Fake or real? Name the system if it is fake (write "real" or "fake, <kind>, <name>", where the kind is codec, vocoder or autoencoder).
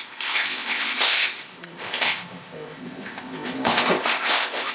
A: fake, codec, ZipCodec